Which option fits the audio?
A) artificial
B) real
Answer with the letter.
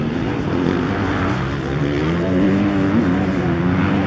B